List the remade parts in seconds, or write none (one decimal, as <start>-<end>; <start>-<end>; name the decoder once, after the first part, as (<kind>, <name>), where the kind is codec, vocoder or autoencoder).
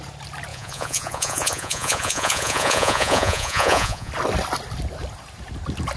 0.5-4.1 (vocoder, Vocos)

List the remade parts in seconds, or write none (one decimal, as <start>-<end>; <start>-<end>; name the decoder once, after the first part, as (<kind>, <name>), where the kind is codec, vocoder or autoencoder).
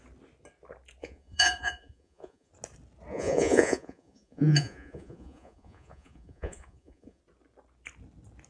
1.0-2.5 (vocoder, Vocos); 3.1-7.2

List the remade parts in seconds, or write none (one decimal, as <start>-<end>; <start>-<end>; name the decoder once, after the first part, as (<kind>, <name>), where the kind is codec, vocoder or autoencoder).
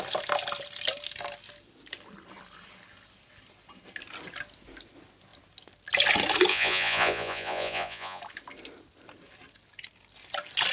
6.5-8.2 (vocoder, Vocos)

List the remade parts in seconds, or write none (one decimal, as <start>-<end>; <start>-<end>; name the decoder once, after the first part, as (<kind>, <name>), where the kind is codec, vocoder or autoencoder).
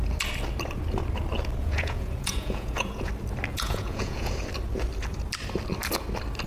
1.6-3.1 (vocoder, Vocos); 3.5-4.3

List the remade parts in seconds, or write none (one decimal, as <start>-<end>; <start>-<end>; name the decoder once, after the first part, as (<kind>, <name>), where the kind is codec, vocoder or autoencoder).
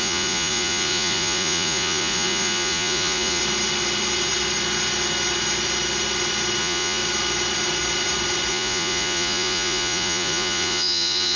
0.0-3.4 (vocoder, Vocos); 6.6-7.0; 8.5-11.4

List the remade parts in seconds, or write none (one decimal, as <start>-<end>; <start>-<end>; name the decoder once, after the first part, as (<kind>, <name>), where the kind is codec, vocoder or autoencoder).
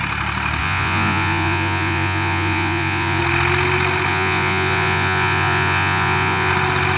0.6-3.2 (vocoder, Vocos); 4.1-6.5